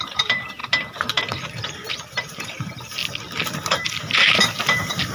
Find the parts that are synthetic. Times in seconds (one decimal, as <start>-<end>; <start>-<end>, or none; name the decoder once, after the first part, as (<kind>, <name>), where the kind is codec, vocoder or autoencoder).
0.0-0.6 (vocoder, BigVGAN v2); 2.2-3.0; 4.0-5.1